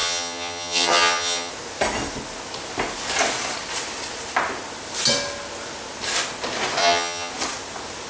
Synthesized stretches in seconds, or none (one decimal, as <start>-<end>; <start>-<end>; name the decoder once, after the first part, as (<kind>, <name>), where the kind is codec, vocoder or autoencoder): 0.0-1.5 (vocoder, HiFi-GAN); 6.8-7.3